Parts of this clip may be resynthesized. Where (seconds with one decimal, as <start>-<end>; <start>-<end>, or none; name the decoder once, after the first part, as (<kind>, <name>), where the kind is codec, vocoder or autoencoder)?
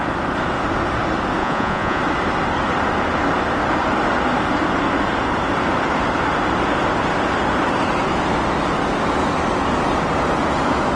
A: 1.4-2.0 (vocoder, Vocos)